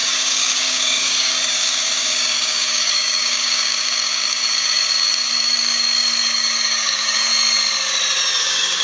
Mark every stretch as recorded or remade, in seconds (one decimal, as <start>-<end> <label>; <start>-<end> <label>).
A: 0.0-7.3 remade; 7.3-8.4 recorded; 8.4-8.8 remade